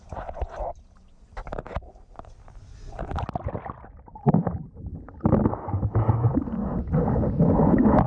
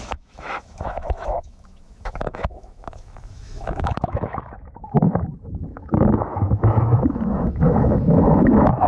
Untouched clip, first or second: first